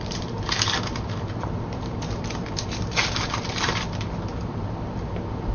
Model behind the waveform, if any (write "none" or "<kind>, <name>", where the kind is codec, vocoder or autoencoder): vocoder, BigVGAN v2